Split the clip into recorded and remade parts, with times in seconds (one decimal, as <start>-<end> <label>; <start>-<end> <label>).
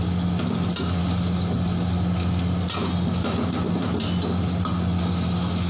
0.0-5.7 recorded